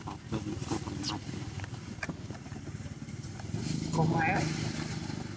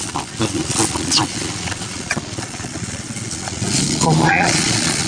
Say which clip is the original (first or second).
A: first